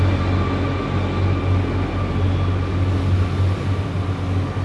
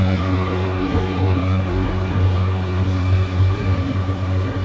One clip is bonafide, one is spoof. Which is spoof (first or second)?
second